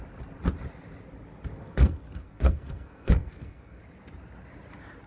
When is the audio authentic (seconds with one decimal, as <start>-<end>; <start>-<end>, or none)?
0.0-1.5; 3.8-5.1